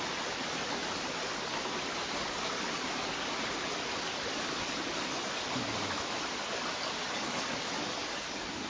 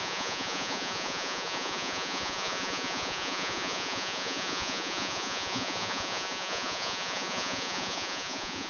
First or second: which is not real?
second